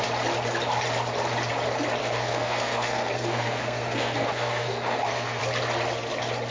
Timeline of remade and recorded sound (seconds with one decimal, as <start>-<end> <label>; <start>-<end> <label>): 0.0-2.0 recorded; 2.0-5.4 remade; 5.4-6.5 recorded